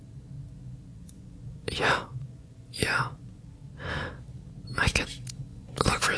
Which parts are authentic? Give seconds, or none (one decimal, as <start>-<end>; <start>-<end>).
0.0-0.9; 3.5-5.5